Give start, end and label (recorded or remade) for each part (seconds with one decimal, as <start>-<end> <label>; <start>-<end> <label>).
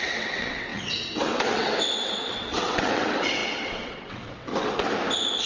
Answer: 0.0-4.5 remade; 4.5-5.5 recorded